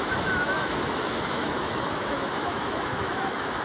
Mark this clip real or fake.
fake